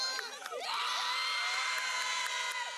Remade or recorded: recorded